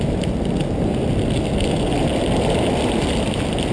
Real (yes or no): yes